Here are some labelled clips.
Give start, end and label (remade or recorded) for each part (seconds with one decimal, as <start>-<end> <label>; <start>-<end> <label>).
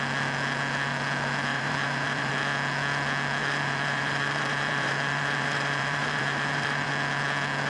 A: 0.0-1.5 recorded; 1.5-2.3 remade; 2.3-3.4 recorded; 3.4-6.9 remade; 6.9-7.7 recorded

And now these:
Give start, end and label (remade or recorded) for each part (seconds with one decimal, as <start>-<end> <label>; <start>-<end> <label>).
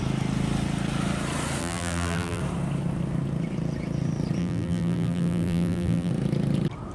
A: 0.0-1.6 recorded; 1.6-2.4 remade; 2.4-4.4 recorded; 4.4-6.1 remade; 6.1-6.9 recorded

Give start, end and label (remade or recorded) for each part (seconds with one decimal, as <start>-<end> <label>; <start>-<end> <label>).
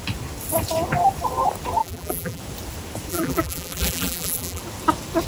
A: 0.0-1.8 recorded; 1.8-2.4 remade; 2.4-3.1 recorded; 3.1-4.6 remade; 4.6-5.3 recorded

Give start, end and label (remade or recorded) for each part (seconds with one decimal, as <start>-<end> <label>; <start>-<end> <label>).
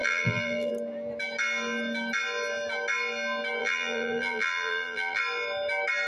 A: 0.0-0.7 remade; 0.7-3.6 recorded; 3.6-5.2 remade; 5.2-6.1 recorded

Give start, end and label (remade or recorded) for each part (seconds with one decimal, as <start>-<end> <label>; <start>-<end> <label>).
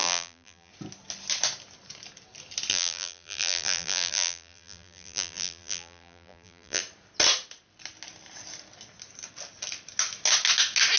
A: 0.0-0.7 remade; 0.7-2.7 recorded; 2.7-6.8 remade; 6.8-11.0 recorded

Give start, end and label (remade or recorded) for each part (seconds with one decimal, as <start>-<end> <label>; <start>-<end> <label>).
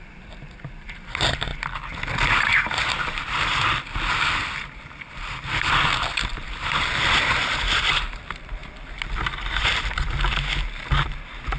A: 0.0-1.5 remade; 1.5-4.8 recorded; 4.8-11.6 remade